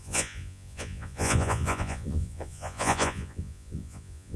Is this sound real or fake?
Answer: fake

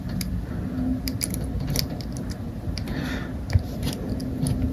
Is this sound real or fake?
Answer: real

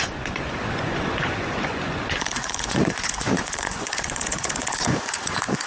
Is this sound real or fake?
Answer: fake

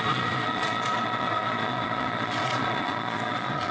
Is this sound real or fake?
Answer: fake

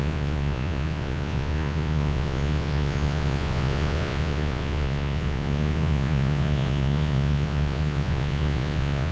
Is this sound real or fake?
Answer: fake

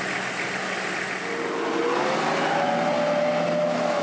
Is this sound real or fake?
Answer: real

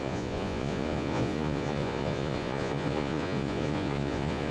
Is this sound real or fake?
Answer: fake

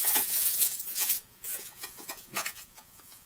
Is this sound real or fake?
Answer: fake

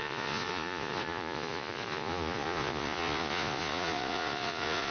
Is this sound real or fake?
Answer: fake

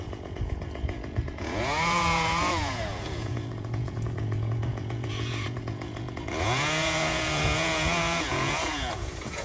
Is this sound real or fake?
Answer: fake